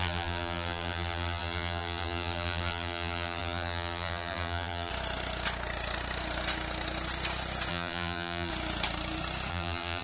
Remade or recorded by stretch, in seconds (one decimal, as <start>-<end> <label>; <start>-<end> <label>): 0.0-4.9 remade; 4.9-7.7 recorded; 7.7-8.5 remade; 8.5-9.5 recorded; 9.5-10.0 remade